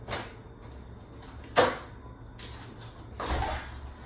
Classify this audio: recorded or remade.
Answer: recorded